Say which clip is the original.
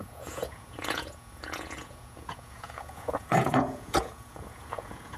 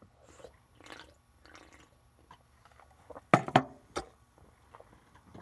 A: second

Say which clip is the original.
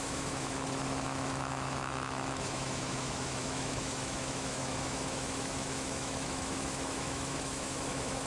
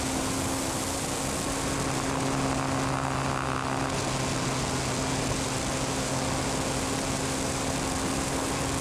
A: second